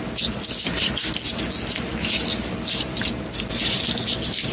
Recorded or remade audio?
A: recorded